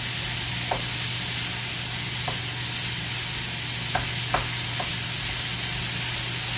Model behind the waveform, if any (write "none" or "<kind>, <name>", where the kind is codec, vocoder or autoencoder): none